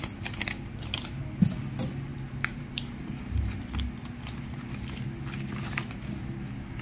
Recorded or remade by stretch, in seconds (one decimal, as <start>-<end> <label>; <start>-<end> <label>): 0.0-2.1 recorded; 2.1-3.6 remade; 3.6-6.8 recorded